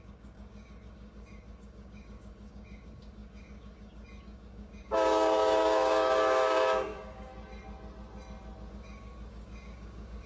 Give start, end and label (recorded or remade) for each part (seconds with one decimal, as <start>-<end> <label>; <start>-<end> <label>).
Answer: 0.0-7.3 remade; 7.3-8.7 recorded; 8.7-10.3 remade